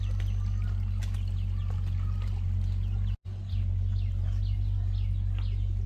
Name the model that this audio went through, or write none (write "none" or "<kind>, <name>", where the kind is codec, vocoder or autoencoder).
none